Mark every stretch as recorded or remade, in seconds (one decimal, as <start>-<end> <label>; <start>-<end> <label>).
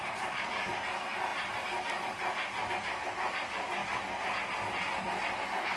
0.0-5.8 recorded